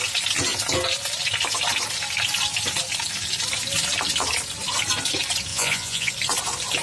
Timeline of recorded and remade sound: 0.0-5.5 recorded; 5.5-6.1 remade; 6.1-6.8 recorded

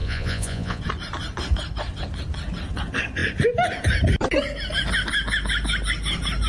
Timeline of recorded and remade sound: 0.0-0.8 remade; 0.8-6.5 recorded

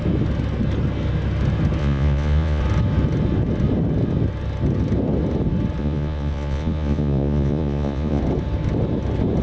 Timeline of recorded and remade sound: 0.0-1.8 recorded; 1.8-2.6 remade; 2.6-5.8 recorded; 5.8-8.2 remade; 8.2-9.4 recorded

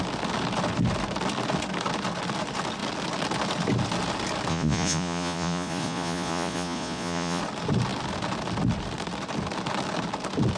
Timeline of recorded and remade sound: 0.0-4.5 recorded; 4.5-7.4 remade; 7.4-10.6 recorded

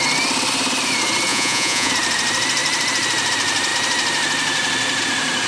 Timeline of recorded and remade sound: 0.0-1.3 recorded; 1.3-1.9 remade; 1.9-5.5 recorded